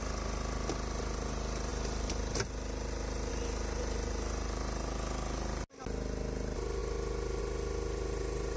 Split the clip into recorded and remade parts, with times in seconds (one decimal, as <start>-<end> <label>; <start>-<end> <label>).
0.0-8.6 recorded